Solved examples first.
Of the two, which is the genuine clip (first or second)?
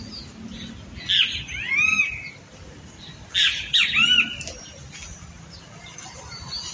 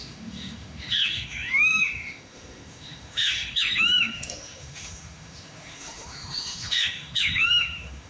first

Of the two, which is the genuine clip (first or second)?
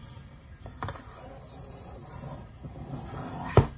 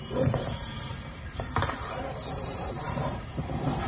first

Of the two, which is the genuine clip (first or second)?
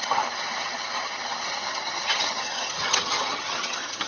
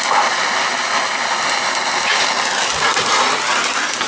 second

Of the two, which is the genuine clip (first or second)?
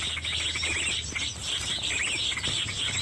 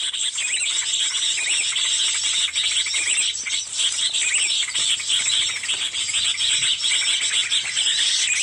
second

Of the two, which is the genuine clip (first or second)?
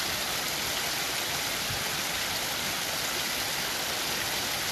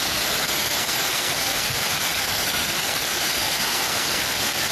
first